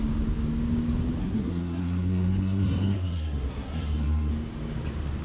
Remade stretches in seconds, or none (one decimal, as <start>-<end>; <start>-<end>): 1.2-4.3

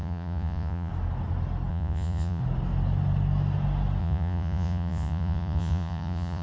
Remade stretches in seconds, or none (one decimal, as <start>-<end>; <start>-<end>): 0.0-0.9; 1.7-2.4; 4.0-6.4

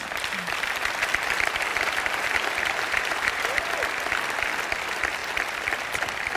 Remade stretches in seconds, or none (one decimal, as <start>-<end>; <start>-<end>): 1.7-3.6